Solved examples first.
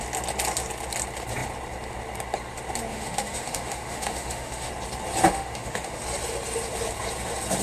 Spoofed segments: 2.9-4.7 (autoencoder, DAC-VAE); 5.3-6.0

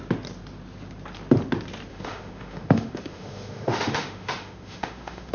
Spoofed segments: 1.9-5.3 (autoencoder, DAC-VAE)